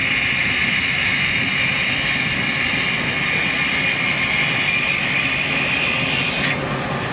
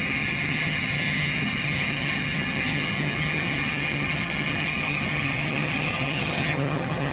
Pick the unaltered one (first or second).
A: first